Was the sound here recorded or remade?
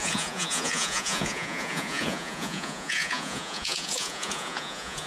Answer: remade